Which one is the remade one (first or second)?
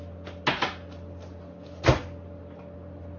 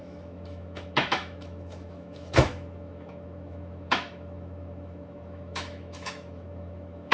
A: second